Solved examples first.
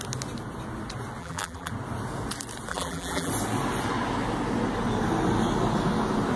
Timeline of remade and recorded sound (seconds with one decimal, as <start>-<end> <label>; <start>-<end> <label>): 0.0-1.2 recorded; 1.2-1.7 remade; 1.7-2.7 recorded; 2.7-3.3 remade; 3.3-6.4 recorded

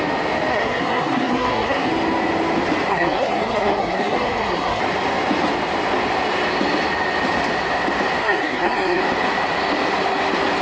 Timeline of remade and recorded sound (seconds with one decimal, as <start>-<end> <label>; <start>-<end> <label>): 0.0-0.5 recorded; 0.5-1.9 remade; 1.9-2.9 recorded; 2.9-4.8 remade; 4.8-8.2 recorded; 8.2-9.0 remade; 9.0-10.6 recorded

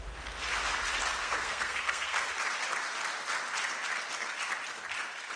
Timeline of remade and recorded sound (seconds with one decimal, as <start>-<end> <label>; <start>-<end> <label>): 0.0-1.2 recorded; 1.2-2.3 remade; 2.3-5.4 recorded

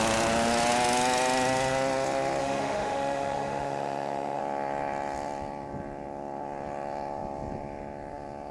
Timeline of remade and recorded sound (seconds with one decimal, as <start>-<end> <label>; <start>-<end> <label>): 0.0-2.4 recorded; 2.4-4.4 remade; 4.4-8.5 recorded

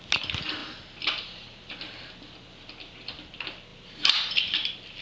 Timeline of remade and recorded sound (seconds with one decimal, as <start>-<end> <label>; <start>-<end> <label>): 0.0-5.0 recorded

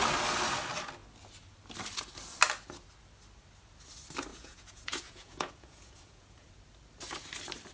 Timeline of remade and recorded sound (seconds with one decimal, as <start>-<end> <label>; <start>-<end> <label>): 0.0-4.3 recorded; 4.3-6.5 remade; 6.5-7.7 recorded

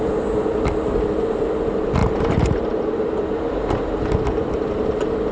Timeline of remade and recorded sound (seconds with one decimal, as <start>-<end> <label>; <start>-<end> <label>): 0.0-2.0 recorded; 2.0-3.7 remade; 3.7-5.3 recorded